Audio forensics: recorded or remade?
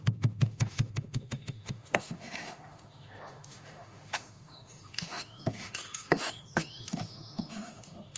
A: remade